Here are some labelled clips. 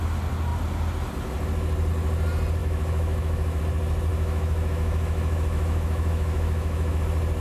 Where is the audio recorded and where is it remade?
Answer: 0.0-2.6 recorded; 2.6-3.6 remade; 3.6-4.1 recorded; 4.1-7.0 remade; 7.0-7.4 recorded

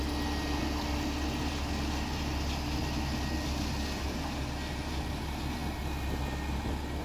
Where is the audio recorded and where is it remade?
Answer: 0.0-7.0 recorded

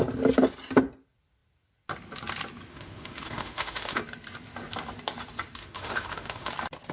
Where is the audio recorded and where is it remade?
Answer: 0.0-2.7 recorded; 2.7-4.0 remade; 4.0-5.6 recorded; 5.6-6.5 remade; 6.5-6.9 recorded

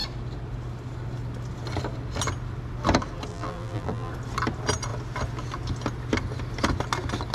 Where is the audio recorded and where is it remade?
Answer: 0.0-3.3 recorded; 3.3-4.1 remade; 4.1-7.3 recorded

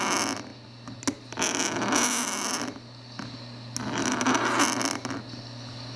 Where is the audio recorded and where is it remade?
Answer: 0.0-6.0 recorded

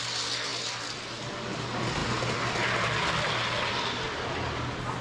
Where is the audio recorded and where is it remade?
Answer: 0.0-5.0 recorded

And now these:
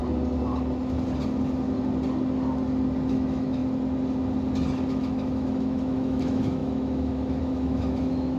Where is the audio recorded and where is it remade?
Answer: 0.0-3.1 recorded; 3.1-3.6 remade; 3.6-4.9 recorded; 4.9-8.4 remade